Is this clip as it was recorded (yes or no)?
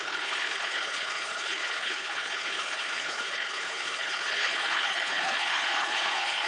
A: no